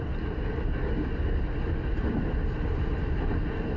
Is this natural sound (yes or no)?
yes